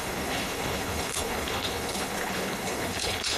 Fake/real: fake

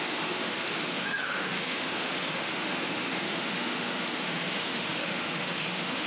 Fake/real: fake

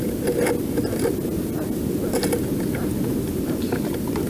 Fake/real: real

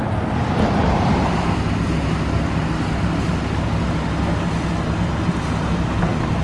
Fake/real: real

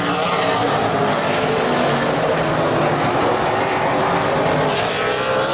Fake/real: real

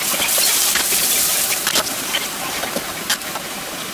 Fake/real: fake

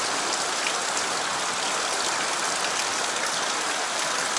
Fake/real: real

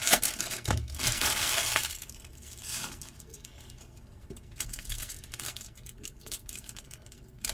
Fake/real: fake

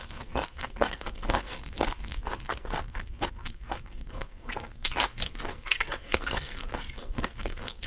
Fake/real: fake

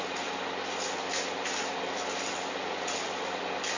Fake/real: real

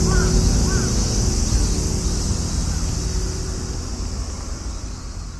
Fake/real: real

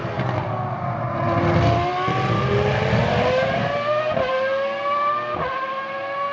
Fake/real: real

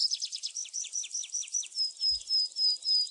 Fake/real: fake